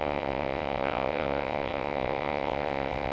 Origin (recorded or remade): remade